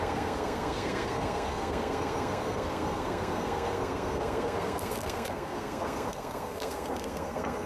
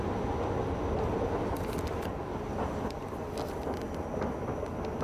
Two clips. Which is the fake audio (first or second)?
first